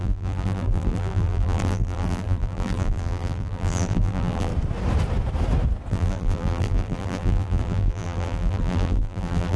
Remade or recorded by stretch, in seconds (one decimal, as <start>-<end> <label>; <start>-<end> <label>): 0.0-4.5 remade; 4.5-5.9 recorded; 5.9-9.6 remade